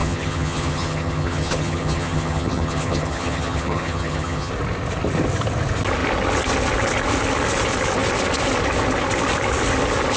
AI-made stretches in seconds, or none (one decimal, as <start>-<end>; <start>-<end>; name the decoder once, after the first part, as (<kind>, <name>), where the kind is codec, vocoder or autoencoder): 0.0-4.5 (vocoder, HiFi-GAN)